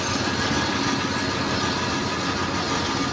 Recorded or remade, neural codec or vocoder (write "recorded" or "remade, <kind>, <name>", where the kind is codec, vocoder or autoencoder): recorded